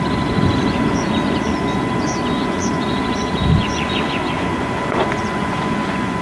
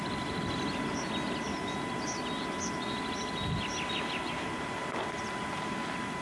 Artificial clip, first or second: first